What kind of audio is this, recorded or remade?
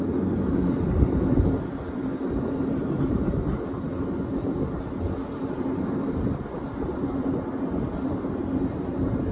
recorded